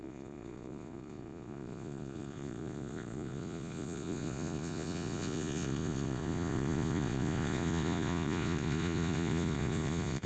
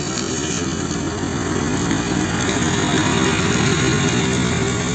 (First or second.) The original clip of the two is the second